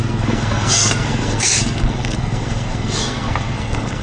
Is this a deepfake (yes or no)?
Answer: yes